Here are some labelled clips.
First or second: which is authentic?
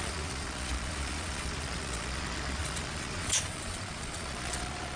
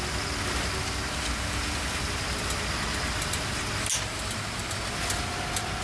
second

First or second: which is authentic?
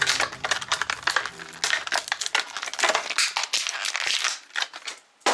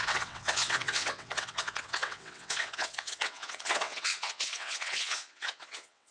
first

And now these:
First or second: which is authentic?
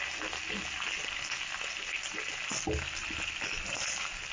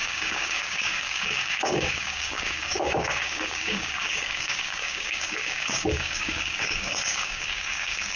first